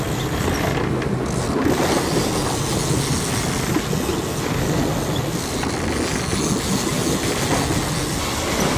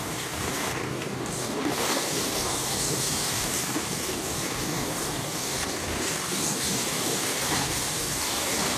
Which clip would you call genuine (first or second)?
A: first